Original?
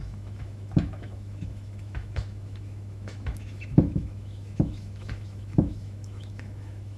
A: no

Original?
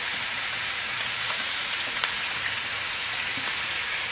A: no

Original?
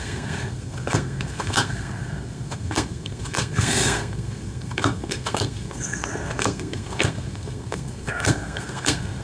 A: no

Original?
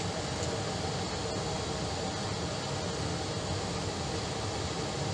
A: yes